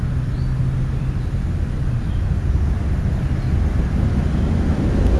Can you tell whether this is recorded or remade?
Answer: recorded